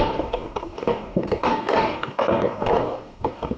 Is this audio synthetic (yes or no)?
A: yes